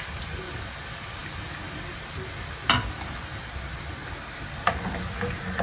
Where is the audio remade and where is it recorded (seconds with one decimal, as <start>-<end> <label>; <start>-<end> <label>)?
0.0-5.6 recorded